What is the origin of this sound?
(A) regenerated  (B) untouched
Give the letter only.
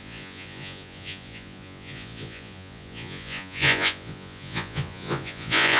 A